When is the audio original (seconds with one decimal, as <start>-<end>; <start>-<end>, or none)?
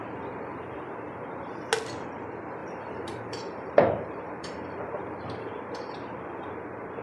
0.0-0.5; 1.7-2.6